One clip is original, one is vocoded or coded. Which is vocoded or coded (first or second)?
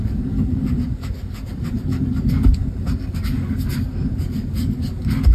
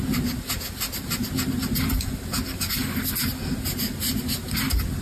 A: first